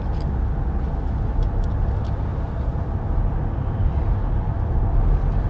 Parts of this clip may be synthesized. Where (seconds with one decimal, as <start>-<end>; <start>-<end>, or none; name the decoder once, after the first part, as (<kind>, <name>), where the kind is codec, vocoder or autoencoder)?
none